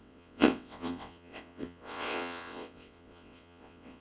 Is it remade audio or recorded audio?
remade